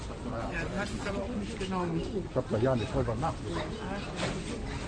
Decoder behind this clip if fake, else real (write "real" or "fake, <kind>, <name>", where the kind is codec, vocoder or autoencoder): real